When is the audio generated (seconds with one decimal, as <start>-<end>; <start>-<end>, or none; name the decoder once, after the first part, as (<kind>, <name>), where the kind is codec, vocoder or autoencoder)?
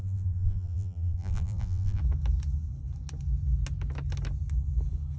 0.0-2.0 (vocoder, BigVGAN v2)